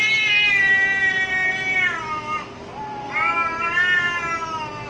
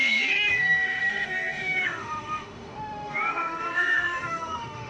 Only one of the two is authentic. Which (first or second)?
first